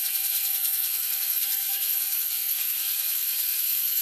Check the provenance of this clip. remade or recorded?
remade